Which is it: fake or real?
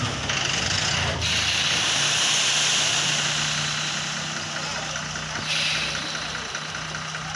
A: real